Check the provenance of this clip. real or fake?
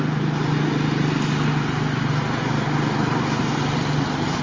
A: real